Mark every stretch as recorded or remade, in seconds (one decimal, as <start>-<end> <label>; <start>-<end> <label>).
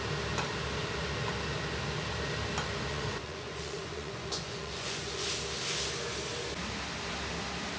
0.0-2.9 recorded; 2.9-5.3 remade; 5.3-7.8 recorded